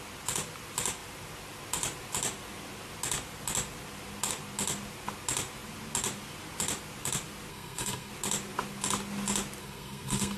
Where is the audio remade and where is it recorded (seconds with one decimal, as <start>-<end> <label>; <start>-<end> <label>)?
0.0-7.5 recorded; 7.5-8.1 remade; 8.1-9.6 recorded; 9.6-10.4 remade